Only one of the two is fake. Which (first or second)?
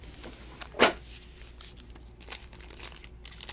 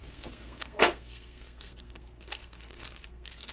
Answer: second